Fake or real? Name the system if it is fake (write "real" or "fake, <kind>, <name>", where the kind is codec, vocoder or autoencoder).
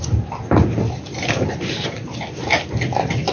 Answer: real